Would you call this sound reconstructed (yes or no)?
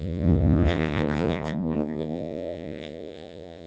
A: yes